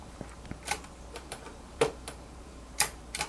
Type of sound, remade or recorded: remade